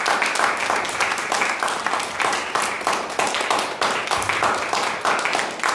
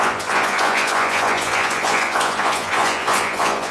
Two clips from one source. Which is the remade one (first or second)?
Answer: second